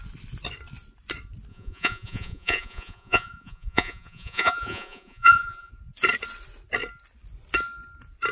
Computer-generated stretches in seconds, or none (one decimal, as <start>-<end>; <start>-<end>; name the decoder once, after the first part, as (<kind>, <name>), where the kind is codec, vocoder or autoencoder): 1.5-5.7 (vocoder, Vocos)